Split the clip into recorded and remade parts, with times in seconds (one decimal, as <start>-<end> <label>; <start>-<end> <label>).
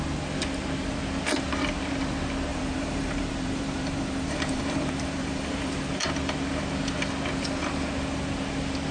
0.0-2.5 recorded; 2.5-5.9 remade; 5.9-8.9 recorded